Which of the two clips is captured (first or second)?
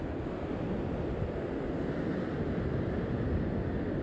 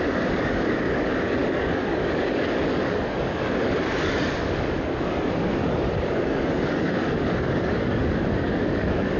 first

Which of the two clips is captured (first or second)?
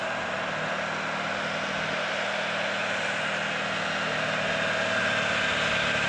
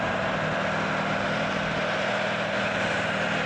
first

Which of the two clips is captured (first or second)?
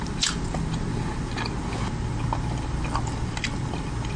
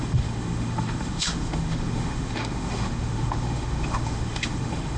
first